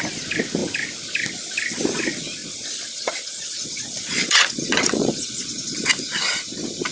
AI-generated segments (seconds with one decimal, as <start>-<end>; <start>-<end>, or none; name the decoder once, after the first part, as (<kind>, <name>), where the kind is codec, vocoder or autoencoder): 2.4-5.9 (vocoder, Vocos)